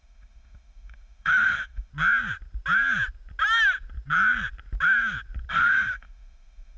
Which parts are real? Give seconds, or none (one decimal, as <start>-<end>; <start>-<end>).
1.9-5.5